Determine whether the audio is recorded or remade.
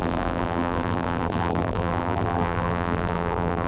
remade